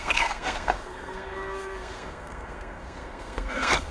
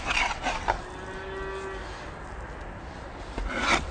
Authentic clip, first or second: second